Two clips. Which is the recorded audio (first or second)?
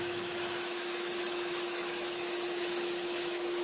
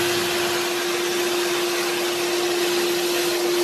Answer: second